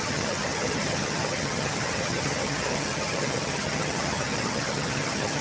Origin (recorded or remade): remade